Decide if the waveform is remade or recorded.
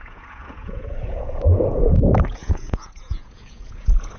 remade